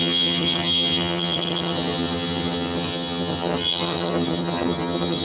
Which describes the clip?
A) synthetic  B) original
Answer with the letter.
A